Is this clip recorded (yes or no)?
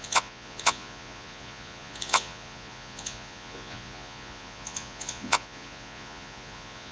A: no